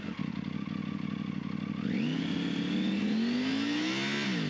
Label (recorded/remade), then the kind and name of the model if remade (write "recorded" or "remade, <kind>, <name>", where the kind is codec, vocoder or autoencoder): recorded